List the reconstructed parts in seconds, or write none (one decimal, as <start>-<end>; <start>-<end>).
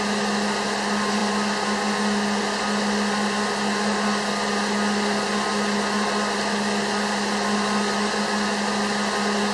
none